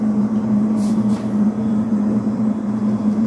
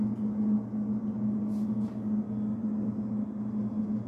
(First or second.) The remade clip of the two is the first